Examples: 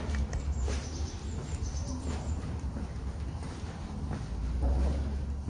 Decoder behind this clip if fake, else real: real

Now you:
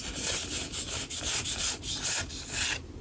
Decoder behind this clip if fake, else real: real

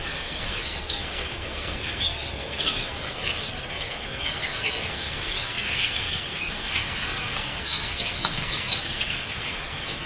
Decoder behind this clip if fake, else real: fake, codec, SNAC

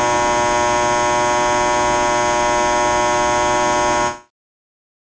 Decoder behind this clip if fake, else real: real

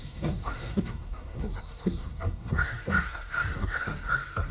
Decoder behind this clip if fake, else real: fake, codec, SNAC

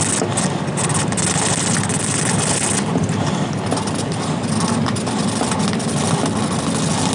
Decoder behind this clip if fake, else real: real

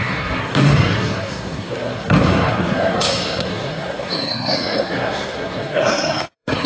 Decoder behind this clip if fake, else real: fake, codec, SNAC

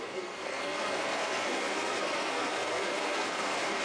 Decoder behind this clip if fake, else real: fake, codec, SNAC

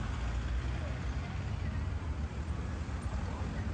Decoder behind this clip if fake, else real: real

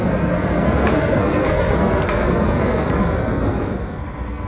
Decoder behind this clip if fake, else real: fake, codec, SNAC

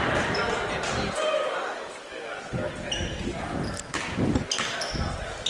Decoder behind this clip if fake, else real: real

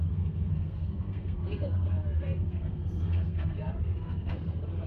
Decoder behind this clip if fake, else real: fake, codec, SNAC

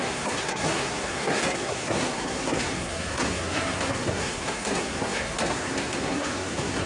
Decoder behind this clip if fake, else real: fake, codec, SNAC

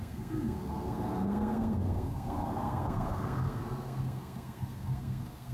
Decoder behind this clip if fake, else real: fake, codec, SNAC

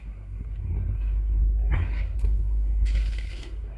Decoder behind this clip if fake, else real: fake, codec, SNAC